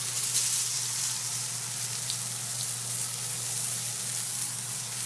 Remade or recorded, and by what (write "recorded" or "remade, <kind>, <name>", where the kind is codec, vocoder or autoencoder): recorded